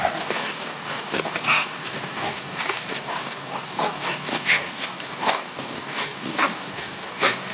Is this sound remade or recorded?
remade